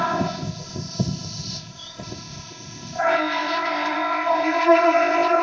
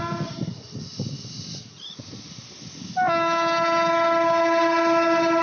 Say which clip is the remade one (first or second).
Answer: first